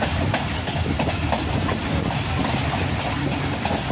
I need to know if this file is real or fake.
real